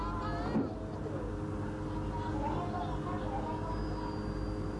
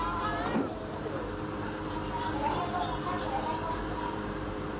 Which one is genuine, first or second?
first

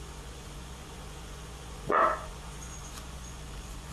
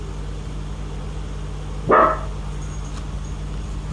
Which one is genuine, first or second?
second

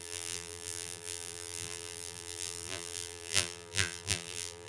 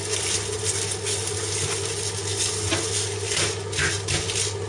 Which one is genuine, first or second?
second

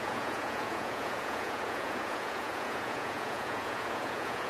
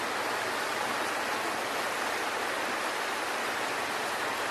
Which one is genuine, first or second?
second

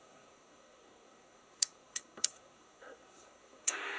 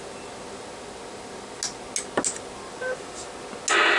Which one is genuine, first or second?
second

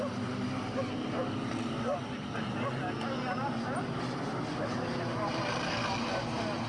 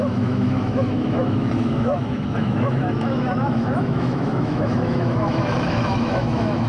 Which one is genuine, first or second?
first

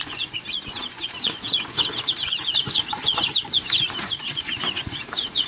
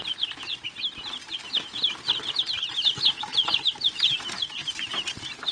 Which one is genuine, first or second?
second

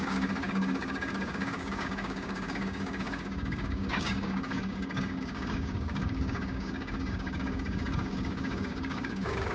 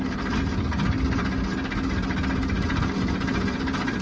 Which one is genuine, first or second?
second